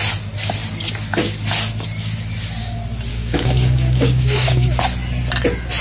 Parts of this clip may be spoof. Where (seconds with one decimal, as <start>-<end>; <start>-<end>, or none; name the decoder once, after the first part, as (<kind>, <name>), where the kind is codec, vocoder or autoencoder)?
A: 3.1-4.8 (codec, DAC)